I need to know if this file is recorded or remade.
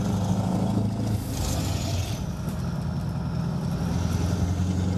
recorded